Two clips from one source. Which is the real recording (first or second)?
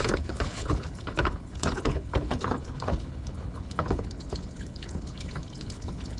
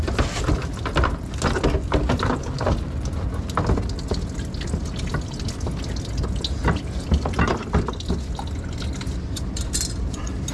second